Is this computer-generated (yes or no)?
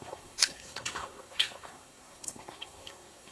yes